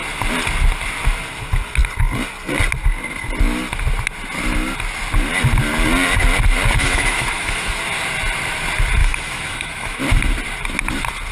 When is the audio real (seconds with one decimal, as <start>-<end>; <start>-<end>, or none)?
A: 0.0-6.8; 7.8-9.0; 10.0-11.3